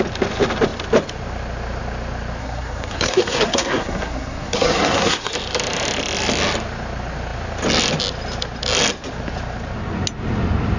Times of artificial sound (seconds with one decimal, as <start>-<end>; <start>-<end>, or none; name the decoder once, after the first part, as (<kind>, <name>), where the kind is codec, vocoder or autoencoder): 2.4-5.3 (codec, SNAC)